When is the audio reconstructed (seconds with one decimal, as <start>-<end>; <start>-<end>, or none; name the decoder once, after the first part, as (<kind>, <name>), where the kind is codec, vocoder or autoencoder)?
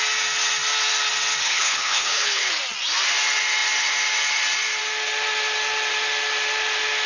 1.4-2.5 (codec, HILCodec)